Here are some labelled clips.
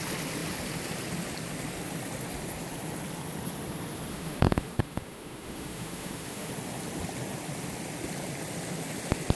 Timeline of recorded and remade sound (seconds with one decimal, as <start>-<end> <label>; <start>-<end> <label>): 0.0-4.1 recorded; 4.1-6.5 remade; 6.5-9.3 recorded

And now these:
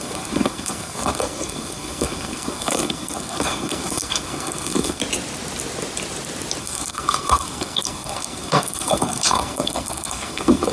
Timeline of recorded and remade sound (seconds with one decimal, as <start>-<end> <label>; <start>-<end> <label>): 0.0-5.0 remade; 5.0-6.6 recorded; 6.6-10.7 remade

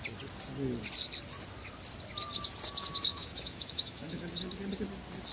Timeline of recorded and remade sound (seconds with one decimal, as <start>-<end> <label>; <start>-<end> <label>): 0.0-3.1 recorded; 3.1-4.3 remade; 4.3-5.3 recorded

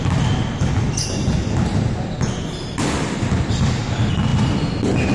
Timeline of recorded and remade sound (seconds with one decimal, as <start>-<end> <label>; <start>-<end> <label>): 0.0-5.1 recorded

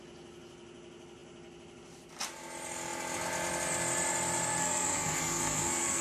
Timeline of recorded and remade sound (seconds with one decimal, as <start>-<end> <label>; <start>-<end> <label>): 0.0-4.6 recorded; 4.6-6.0 remade